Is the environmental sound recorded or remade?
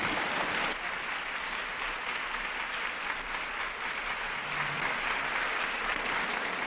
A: recorded